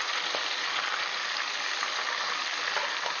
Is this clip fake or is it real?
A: fake